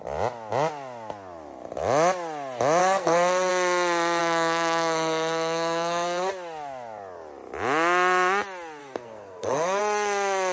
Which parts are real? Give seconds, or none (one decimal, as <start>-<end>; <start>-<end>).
0.0-2.8; 3.5-4.2; 6.3-8.8; 9.8-10.5